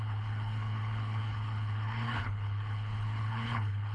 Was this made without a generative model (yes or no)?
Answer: no